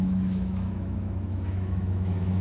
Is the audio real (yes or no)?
no